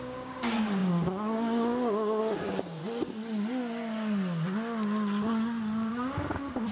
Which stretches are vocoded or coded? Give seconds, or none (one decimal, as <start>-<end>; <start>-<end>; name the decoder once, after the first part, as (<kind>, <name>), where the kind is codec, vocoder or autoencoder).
0.0-2.8 (codec, DAC); 5.9-6.7